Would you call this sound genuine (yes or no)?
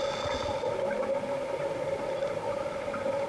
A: yes